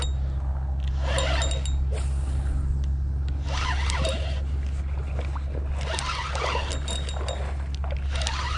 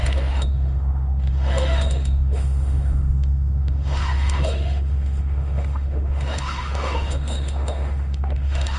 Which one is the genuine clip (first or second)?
first